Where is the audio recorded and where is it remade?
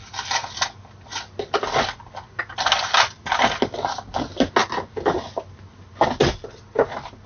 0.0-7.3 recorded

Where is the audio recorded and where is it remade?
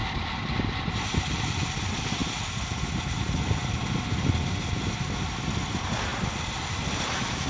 0.0-7.5 recorded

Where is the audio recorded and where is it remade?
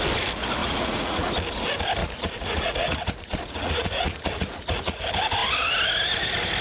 0.0-0.6 recorded; 0.6-1.3 remade; 1.3-2.0 recorded; 2.0-5.0 remade; 5.0-6.6 recorded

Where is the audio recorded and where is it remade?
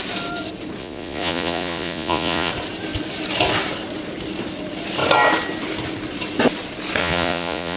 0.0-0.8 recorded; 0.8-2.5 remade; 2.5-7.0 recorded; 7.0-7.8 remade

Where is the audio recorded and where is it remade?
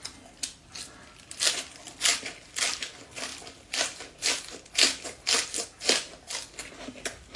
0.0-7.4 recorded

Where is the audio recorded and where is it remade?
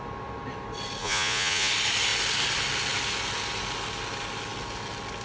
0.0-1.0 recorded; 1.0-1.7 remade; 1.7-5.2 recorded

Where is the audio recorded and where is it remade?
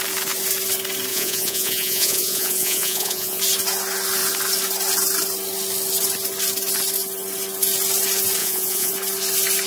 0.0-1.1 recorded; 1.1-3.4 remade; 3.4-8.4 recorded; 8.4-8.9 remade; 8.9-9.7 recorded